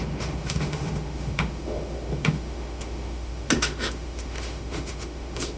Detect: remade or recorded remade